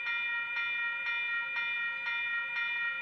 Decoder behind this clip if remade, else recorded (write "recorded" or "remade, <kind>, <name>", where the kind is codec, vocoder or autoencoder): recorded